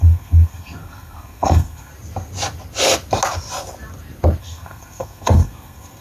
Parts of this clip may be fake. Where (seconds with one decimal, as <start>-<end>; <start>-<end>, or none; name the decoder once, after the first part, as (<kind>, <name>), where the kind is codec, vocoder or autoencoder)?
0.0-1.9 (codec, SNAC); 4.4-6.0

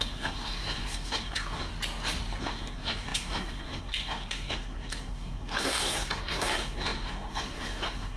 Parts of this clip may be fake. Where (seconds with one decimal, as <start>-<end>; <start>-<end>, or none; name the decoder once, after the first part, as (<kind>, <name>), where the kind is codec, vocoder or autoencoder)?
0.0-1.7 (codec, SNAC); 2.4-8.2

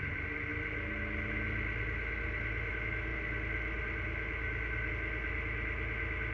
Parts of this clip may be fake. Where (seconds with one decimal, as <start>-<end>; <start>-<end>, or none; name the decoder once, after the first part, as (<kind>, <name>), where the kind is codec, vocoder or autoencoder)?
none

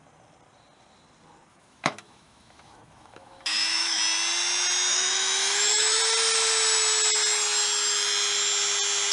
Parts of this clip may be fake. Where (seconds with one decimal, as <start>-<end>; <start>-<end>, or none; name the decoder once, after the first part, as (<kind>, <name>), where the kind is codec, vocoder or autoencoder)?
1.5-4.0 (autoencoder, DAC-VAE); 4.9-6.0

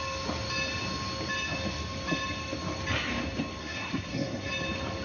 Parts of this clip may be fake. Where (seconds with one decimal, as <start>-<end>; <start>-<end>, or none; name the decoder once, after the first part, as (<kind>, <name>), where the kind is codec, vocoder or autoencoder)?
3.6-4.5 (codec, SNAC)

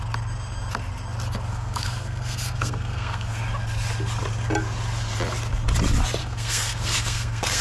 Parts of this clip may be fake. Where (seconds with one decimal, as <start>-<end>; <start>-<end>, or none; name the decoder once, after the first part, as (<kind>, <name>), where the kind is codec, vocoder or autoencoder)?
1.5-3.4 (codec, SNAC); 6.2-7.6